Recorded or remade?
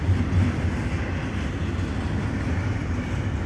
recorded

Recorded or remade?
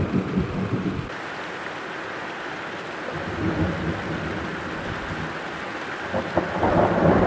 recorded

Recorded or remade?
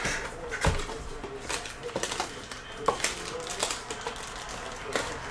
recorded